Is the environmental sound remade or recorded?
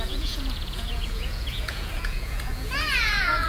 remade